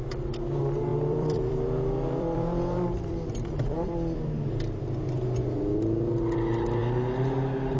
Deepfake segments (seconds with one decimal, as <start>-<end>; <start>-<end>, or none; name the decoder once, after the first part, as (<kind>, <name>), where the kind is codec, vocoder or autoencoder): 0.9-4.8 (vocoder, BigVGAN v2)